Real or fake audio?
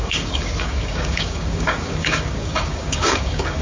fake